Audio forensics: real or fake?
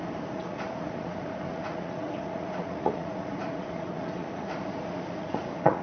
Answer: fake